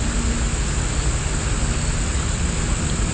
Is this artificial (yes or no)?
no